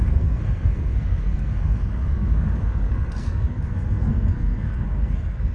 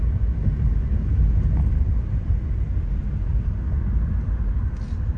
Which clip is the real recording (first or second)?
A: second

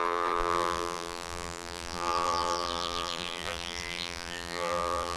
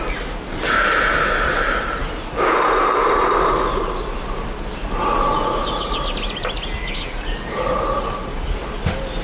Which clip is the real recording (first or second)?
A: second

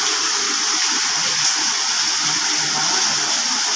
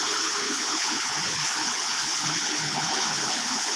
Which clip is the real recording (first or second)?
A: first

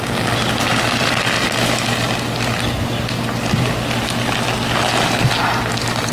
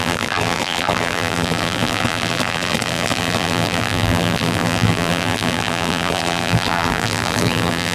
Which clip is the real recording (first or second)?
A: first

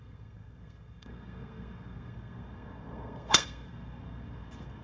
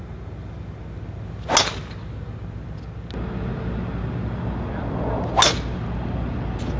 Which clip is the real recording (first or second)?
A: second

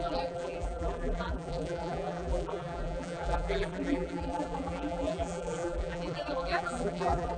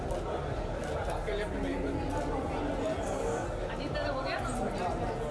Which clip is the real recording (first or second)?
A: second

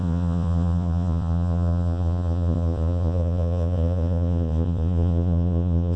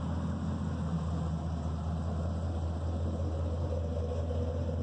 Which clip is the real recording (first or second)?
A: second